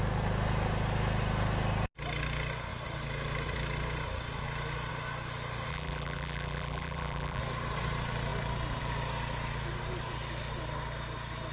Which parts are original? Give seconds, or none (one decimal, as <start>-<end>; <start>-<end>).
0.0-5.7; 7.4-11.5